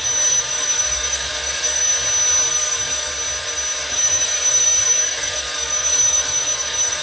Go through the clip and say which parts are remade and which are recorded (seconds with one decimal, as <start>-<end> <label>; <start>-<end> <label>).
0.0-1.9 remade; 1.9-2.5 recorded; 2.5-3.1 remade; 3.1-3.8 recorded; 3.8-7.0 remade